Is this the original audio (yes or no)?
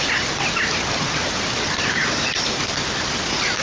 yes